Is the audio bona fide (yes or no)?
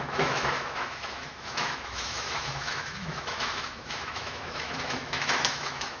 no